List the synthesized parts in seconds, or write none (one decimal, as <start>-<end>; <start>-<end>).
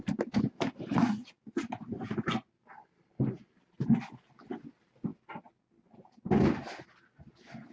none